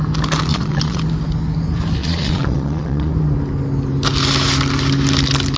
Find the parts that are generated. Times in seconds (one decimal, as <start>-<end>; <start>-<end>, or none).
0.5-1.0; 2.0-3.1